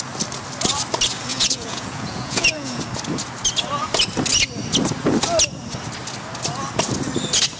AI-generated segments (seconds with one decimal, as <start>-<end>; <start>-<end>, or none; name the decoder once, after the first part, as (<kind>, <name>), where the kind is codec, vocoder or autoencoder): 1.3-2.8 (vocoder, Vocos)